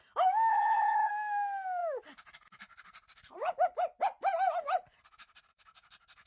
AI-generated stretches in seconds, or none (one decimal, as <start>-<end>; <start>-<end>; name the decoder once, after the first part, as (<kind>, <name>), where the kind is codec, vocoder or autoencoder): 0.5-1.1 (codec, HILCodec)